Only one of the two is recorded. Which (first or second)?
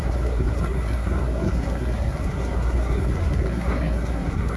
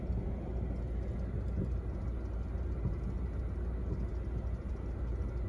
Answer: second